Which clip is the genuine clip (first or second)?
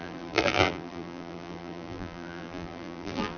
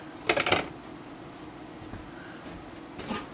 second